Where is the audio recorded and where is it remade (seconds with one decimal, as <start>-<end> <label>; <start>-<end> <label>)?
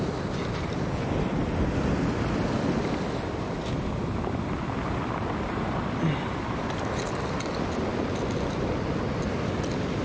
0.0-10.0 recorded